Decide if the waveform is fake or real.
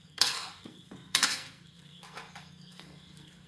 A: fake